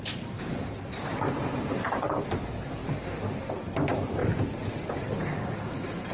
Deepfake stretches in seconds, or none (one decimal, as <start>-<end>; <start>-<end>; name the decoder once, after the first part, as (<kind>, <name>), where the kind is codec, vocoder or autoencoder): 0.0-2.8 (vocoder, BigVGAN v2); 3.5-4.2; 4.8-6.1